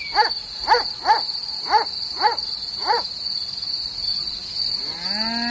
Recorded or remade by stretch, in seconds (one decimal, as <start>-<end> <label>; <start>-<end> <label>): 0.0-4.1 recorded; 4.1-4.9 remade; 4.9-5.5 recorded